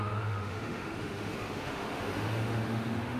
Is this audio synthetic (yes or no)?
yes